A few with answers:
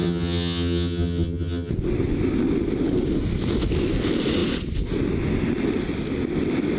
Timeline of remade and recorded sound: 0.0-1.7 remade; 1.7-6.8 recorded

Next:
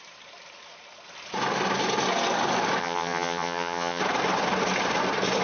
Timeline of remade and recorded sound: 0.0-2.8 recorded; 2.8-4.0 remade; 4.0-5.4 recorded

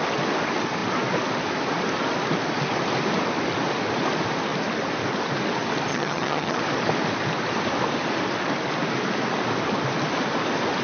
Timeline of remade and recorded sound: 0.0-5.9 recorded; 5.9-6.6 remade; 6.6-10.8 recorded

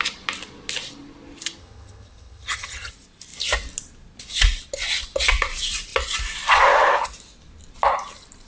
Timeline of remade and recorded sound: 0.0-1.6 recorded; 1.6-2.9 remade; 2.9-8.5 recorded

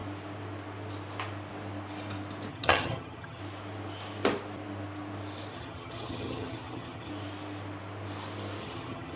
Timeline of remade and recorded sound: 0.0-2.5 recorded; 2.5-3.4 remade; 3.4-5.5 recorded; 5.5-7.1 remade; 7.1-8.6 recorded; 8.6-9.2 remade

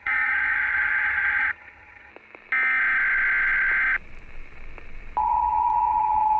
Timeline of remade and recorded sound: 0.0-2.1 remade; 2.1-5.2 recorded; 5.2-6.4 remade

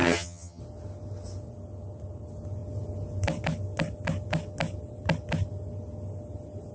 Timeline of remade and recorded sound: 0.0-0.6 remade; 0.6-6.7 recorded

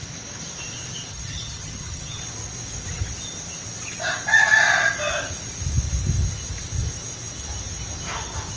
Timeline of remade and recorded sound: 0.0-1.1 recorded; 1.1-2.2 remade; 2.2-8.6 recorded